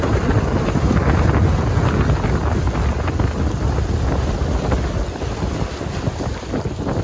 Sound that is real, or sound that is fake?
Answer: real